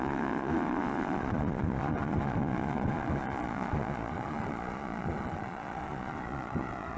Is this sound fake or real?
fake